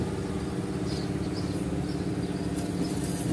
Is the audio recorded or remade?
recorded